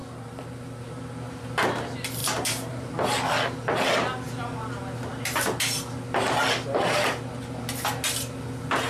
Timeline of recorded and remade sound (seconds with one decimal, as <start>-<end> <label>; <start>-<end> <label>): 0.0-1.4 remade; 1.4-2.2 recorded; 2.2-2.9 remade; 2.9-5.1 recorded; 5.1-5.8 remade; 5.8-8.9 recorded